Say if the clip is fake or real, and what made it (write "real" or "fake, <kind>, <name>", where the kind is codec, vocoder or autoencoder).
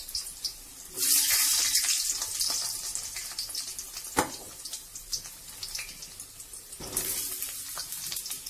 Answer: real